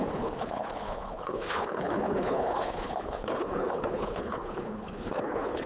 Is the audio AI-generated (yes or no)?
yes